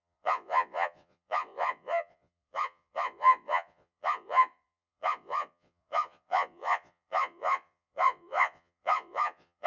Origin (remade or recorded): remade